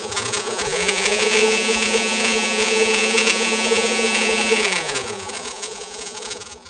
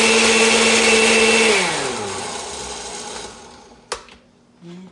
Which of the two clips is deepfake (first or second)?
first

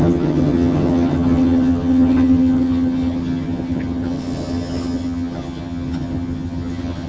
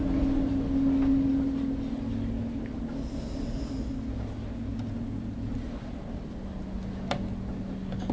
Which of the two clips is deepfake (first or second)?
first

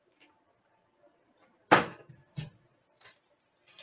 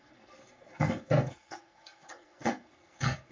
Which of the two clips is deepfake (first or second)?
second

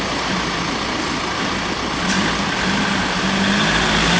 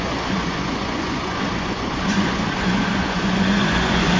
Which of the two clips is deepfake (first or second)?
second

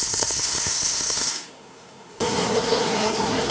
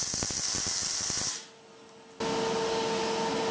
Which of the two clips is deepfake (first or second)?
first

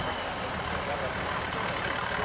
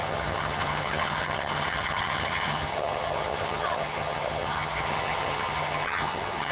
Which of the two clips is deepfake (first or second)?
second